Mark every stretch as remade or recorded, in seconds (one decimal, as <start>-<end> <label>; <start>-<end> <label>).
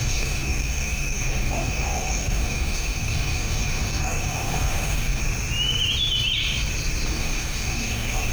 0.0-5.2 remade; 5.2-7.1 recorded; 7.1-8.3 remade